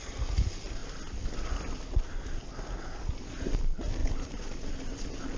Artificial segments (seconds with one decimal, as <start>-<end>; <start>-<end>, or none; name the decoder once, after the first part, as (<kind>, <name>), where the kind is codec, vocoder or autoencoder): none